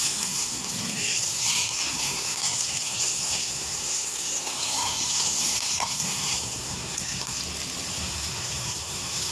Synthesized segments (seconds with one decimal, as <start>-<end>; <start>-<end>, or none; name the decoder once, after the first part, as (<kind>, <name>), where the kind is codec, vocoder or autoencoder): 0.0-7.4 (codec, SNAC); 7.9-9.3